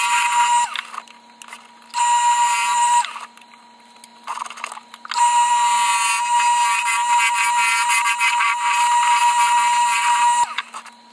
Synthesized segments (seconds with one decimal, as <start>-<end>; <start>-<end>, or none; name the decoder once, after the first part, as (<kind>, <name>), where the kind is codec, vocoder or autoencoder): 2.6-3.1 (vocoder, BigVGAN v2)